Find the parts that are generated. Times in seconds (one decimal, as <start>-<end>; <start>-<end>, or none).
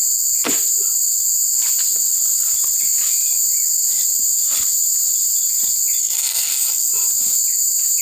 6.0-6.9